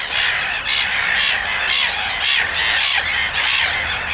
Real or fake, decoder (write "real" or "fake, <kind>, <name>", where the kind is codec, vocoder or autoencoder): real